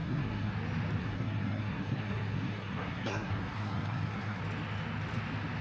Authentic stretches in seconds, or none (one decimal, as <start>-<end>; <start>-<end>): 0.5-1.0; 4.4-5.6